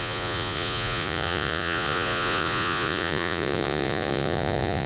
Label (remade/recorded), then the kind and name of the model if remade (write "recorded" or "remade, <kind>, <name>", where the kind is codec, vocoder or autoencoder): remade, vocoder, Vocos